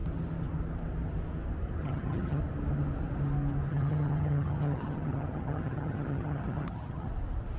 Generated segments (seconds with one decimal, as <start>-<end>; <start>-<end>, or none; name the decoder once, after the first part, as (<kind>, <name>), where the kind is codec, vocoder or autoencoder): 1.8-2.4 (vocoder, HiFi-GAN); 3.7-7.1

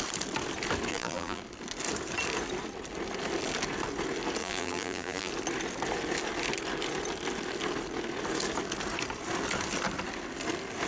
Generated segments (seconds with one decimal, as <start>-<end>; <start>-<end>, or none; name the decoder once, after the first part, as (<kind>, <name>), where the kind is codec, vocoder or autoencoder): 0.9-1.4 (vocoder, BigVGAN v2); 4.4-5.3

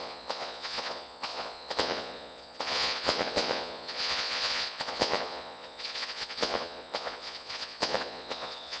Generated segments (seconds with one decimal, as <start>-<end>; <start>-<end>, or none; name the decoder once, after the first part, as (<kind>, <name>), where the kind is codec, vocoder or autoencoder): 0.0-8.8 (vocoder, Vocos)

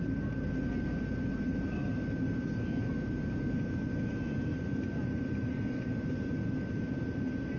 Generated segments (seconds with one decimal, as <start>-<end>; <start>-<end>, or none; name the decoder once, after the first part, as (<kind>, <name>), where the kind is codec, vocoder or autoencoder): none

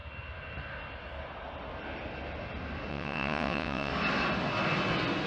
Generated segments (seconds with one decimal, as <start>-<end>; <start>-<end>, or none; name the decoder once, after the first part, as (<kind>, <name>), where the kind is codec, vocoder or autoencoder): 2.9-3.9 (vocoder, WaveNeXt)